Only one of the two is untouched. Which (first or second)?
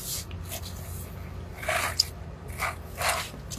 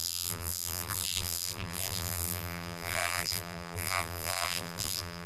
first